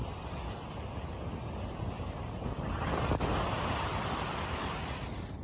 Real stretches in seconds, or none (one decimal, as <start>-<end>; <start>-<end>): 0.0-5.4